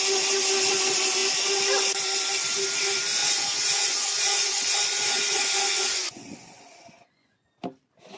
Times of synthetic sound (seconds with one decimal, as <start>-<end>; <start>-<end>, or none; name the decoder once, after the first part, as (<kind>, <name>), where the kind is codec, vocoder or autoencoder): 3.2-7.5 (vocoder, Vocos)